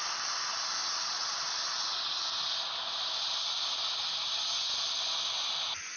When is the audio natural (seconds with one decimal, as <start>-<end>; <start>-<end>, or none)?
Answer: 0.0-6.0